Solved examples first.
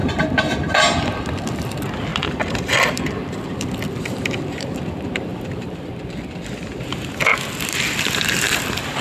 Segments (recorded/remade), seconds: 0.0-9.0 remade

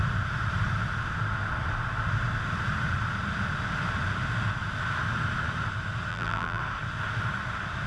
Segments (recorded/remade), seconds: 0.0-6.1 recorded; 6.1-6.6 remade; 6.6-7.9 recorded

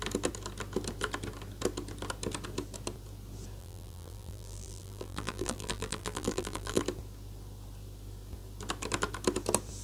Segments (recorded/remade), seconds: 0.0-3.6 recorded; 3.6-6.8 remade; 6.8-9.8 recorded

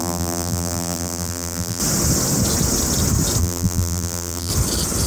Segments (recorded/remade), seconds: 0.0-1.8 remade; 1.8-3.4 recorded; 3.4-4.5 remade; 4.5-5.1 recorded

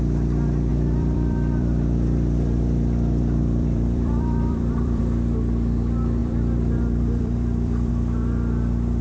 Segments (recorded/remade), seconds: 0.0-0.7 recorded; 0.7-5.0 remade; 5.0-6.2 recorded; 6.2-7.9 remade; 7.9-9.0 recorded

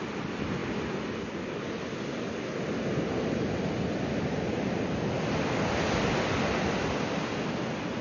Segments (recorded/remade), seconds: 0.0-8.0 recorded

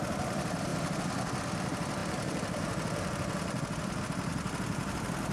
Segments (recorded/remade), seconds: 0.0-0.7 remade; 0.7-1.4 recorded; 1.4-5.3 remade

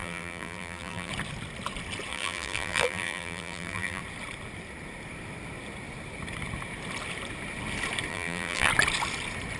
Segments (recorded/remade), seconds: 0.0-1.1 remade; 1.1-2.1 recorded; 2.1-4.0 remade; 4.0-8.1 recorded; 8.1-8.7 remade; 8.7-9.6 recorded